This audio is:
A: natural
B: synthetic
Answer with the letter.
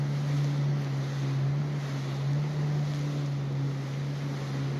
A